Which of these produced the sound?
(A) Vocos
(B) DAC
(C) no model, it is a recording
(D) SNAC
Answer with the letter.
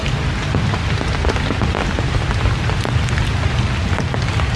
C